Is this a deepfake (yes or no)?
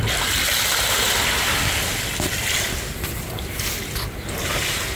no